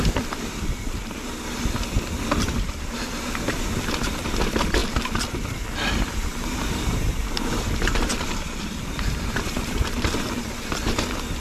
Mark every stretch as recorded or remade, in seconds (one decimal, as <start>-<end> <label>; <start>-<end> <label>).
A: 0.0-1.2 remade; 1.2-2.4 recorded; 2.4-4.8 remade; 4.8-6.0 recorded; 6.0-11.4 remade